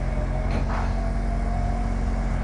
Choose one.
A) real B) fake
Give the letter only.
A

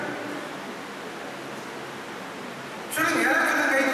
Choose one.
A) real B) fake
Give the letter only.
A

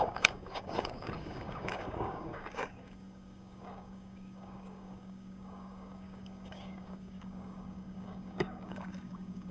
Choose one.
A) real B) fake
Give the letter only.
B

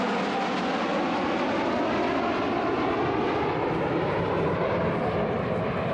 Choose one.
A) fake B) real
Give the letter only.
B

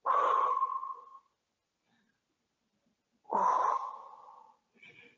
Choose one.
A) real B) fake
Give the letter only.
A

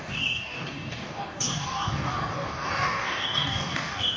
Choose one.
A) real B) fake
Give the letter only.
B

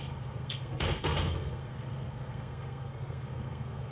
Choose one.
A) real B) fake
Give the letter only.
B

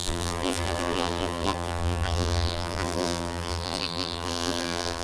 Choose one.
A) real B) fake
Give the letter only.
B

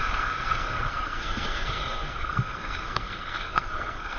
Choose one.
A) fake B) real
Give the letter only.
A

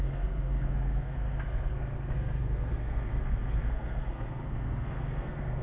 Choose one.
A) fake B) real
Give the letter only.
A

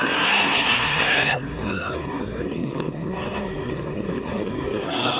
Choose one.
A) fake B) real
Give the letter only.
A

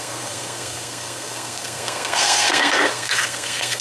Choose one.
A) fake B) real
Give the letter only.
A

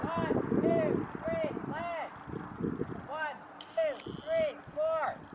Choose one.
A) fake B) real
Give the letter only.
B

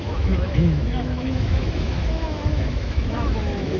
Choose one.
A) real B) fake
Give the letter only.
B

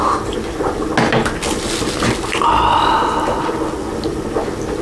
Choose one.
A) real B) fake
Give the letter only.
A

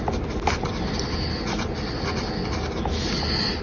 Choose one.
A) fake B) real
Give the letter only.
B